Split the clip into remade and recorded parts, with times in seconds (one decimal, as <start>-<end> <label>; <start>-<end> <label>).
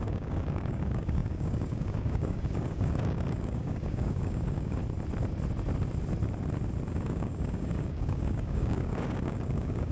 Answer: 0.0-4.8 remade; 4.8-6.9 recorded; 6.9-9.9 remade